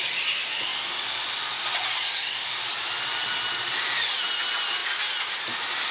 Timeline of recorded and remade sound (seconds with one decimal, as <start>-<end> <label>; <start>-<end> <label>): 0.0-0.7 recorded; 0.7-4.2 remade; 4.2-5.9 recorded